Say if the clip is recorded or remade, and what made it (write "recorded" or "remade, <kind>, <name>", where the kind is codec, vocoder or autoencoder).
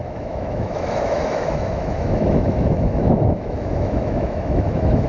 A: remade, autoencoder, DAC-VAE